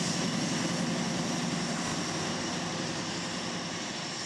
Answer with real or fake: real